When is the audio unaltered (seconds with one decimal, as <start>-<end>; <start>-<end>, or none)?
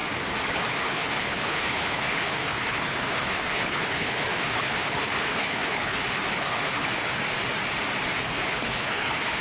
0.0-0.5; 7.2-8.2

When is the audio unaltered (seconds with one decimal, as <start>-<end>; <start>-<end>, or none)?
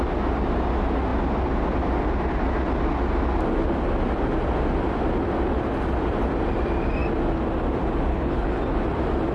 0.0-8.1; 8.6-9.3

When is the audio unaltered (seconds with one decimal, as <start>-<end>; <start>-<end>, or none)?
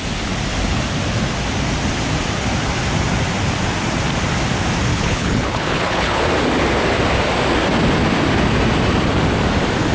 0.0-4.9; 6.2-9.9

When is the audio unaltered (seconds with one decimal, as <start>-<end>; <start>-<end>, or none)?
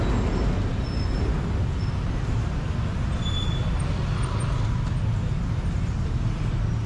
0.0-6.9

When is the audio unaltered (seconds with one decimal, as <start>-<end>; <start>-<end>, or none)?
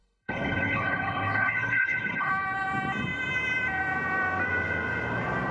2.3-5.5